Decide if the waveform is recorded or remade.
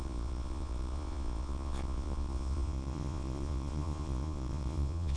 remade